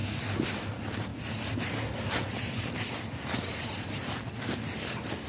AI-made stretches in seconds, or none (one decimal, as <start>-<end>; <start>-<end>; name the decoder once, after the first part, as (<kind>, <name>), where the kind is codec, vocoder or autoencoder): 0.0-0.7 (vocoder, BigVGAN v2); 1.1-4.3